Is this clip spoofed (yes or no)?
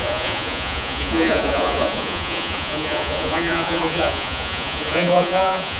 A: yes